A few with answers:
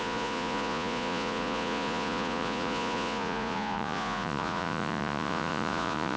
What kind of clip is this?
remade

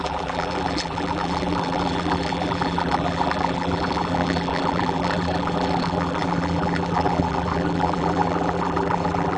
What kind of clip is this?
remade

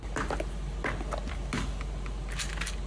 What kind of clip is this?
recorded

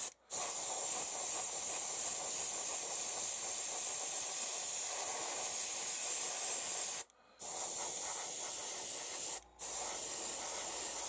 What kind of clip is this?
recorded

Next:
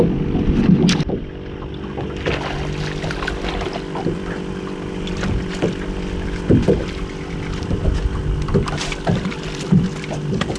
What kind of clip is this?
recorded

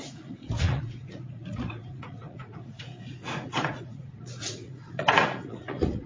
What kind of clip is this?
remade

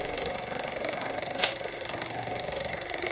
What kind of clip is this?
remade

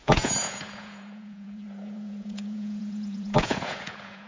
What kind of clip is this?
remade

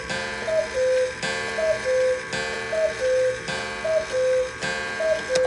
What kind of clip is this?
recorded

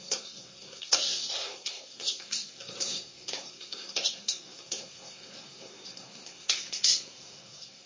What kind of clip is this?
remade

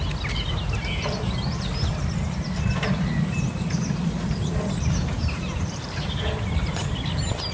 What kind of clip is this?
recorded